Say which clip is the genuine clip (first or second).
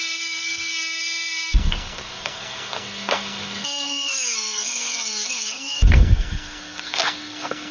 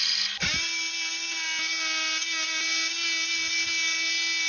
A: second